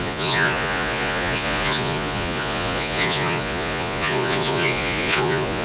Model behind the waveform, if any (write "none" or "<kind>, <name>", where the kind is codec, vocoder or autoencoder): vocoder, Vocos